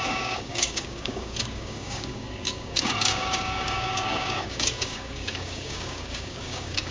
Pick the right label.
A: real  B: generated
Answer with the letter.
B